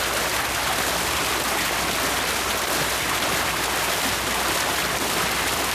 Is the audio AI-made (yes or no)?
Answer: no